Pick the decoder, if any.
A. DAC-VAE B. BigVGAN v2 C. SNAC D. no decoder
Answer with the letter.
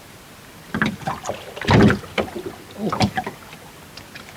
D